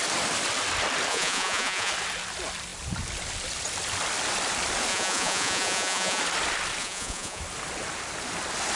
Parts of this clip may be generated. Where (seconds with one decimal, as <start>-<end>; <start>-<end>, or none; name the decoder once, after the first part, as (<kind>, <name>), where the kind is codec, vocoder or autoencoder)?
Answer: 1.1-1.9 (vocoder, Vocos); 4.9-6.2; 6.8-7.4